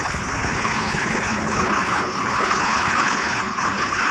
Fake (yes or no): yes